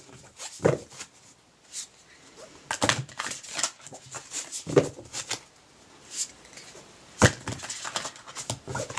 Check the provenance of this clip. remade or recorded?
recorded